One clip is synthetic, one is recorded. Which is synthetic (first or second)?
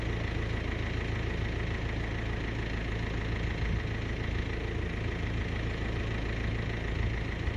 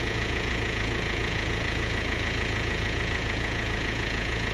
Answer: second